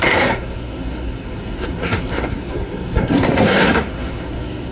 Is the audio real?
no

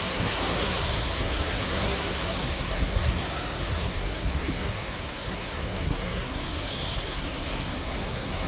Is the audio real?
no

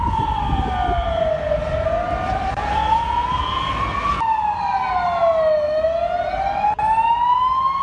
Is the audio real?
yes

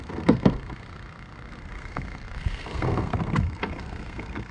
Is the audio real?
no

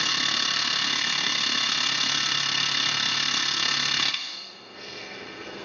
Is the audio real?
no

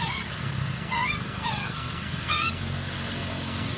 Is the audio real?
no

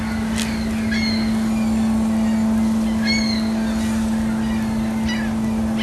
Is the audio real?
yes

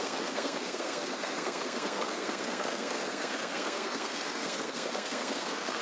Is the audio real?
no